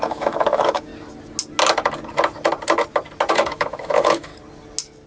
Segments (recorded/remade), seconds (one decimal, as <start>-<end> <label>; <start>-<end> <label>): 0.0-0.9 remade; 0.9-3.3 recorded; 3.3-4.3 remade; 4.3-5.1 recorded

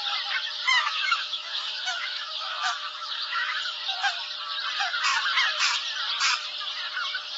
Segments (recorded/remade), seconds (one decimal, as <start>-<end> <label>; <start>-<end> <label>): 0.0-0.7 recorded; 0.7-3.6 remade; 3.6-7.4 recorded

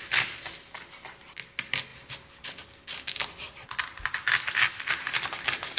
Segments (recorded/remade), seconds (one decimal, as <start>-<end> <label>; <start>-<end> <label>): 0.0-5.8 recorded

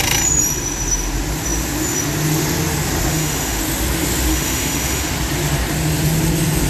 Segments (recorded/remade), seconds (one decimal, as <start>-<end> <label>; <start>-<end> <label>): 0.0-3.1 recorded; 3.1-3.6 remade; 3.6-4.3 recorded; 4.3-5.1 remade; 5.1-6.7 recorded

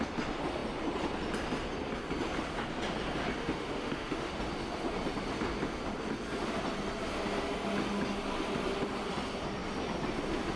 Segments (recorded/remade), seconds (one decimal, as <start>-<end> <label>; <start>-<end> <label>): 0.0-3.4 recorded; 3.4-4.3 remade; 4.3-10.6 recorded

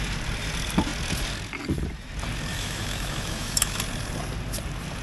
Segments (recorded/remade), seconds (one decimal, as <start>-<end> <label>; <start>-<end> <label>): 0.0-2.5 recorded; 2.5-3.8 remade; 3.8-5.0 recorded